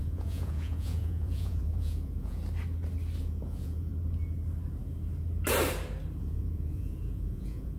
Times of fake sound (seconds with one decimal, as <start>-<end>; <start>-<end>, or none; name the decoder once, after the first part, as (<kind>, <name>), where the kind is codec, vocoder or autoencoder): 0.0-2.4 (vocoder, Vocos); 3.2-3.9; 6.2-7.8